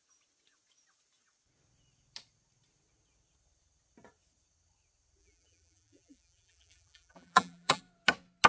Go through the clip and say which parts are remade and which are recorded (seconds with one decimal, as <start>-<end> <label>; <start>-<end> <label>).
0.0-5.2 recorded; 5.2-7.8 remade; 7.8-8.5 recorded